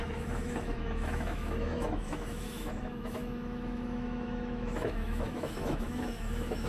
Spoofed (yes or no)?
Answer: yes